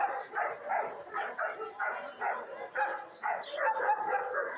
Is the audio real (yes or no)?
yes